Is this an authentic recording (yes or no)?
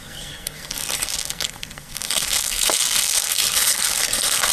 no